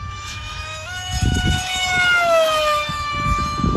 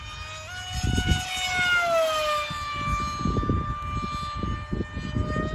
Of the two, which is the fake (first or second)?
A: first